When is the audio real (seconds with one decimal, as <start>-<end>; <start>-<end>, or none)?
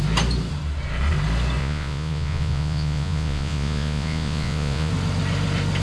0.0-1.6; 4.9-5.8